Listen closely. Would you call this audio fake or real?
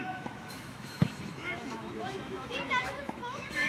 fake